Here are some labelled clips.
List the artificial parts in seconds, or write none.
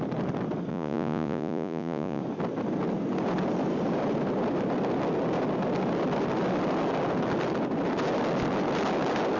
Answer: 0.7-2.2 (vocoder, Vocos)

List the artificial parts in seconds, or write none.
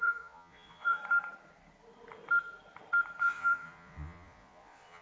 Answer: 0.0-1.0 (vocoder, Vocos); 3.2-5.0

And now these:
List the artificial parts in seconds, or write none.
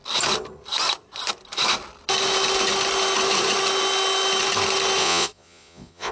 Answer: 5.0-6.1 (vocoder, Vocos)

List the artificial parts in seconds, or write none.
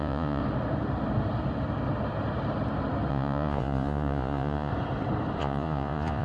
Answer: 0.0-0.4 (vocoder, Vocos); 3.1-4.7; 5.4-6.2